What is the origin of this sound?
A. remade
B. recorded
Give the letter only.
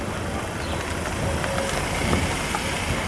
B